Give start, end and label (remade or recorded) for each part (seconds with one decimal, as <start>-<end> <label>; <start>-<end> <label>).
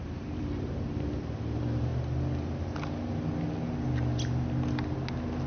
0.0-1.9 remade; 1.9-5.5 recorded